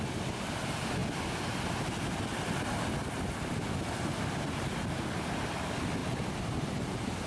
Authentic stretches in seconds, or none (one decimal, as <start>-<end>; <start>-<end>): 0.0-6.0